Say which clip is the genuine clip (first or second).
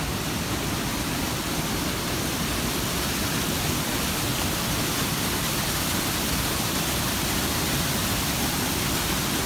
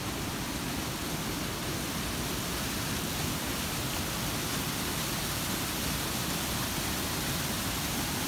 second